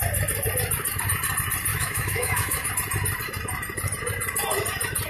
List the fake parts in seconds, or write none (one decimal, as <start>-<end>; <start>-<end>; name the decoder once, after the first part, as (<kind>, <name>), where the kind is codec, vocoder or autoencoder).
1.7-2.7 (autoencoder, DAC-VAE)